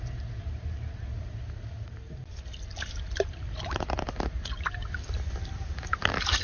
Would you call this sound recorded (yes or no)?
yes